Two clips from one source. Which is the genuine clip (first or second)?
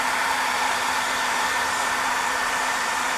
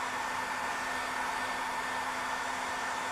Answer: second